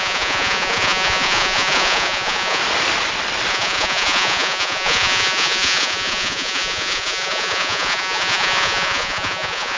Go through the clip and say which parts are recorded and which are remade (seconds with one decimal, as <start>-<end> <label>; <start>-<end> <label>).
0.0-2.6 remade; 2.6-3.5 recorded; 3.5-9.8 remade